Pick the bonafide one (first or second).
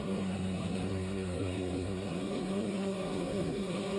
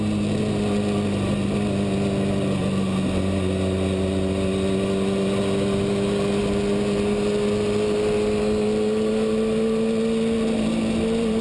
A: second